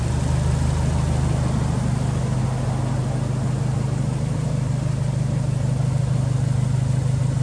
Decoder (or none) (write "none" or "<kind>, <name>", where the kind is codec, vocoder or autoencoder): none